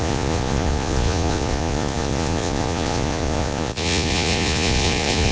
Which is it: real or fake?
fake